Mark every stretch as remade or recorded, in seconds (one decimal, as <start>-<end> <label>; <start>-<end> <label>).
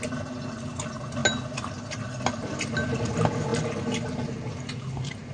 0.0-5.3 recorded